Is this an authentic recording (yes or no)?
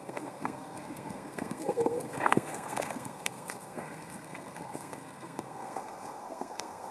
no